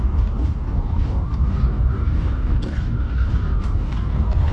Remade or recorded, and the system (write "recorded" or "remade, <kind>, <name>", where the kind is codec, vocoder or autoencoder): remade, codec, DAC